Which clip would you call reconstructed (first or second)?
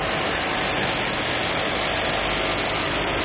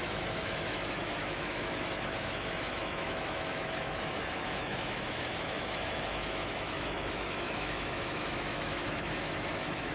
second